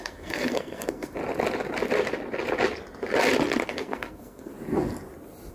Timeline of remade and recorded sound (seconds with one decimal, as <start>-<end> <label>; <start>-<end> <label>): 0.0-1.2 remade; 1.2-3.7 recorded; 3.7-4.5 remade; 4.5-5.5 recorded